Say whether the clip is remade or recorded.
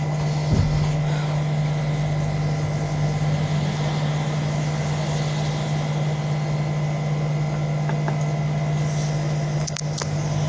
recorded